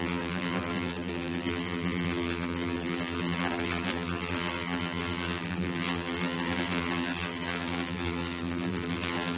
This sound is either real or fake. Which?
fake